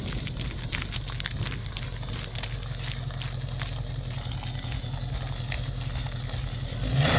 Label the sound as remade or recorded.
recorded